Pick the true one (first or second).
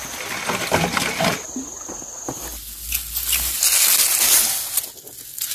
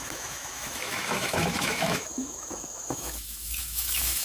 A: first